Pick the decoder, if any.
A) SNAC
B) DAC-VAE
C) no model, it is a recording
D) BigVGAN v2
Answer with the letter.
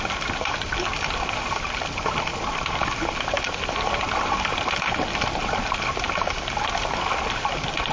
C